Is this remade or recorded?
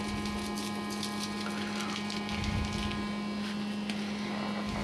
recorded